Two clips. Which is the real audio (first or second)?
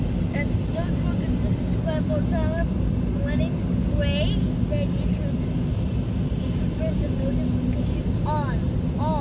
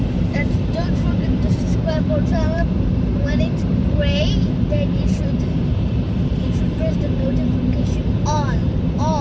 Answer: first